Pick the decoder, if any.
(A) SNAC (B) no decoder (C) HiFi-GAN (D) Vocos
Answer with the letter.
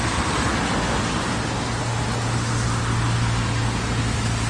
B